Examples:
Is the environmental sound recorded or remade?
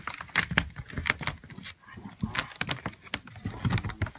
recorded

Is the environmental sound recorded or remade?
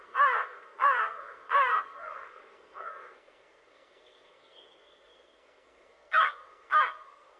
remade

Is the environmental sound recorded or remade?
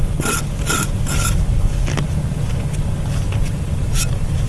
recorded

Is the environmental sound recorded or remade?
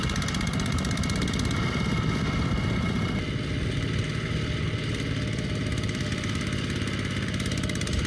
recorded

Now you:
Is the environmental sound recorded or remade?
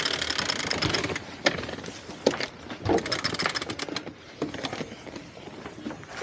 recorded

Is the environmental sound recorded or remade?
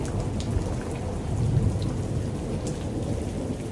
recorded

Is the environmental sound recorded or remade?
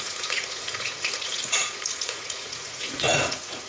remade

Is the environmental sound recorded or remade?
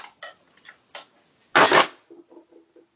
recorded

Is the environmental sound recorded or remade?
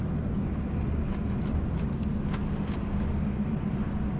recorded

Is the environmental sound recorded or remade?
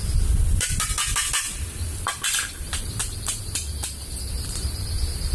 remade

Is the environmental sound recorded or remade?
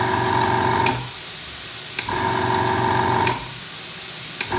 recorded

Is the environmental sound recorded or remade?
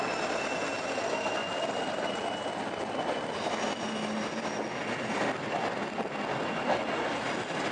recorded